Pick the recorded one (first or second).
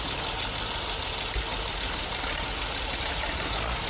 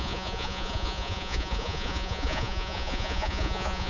first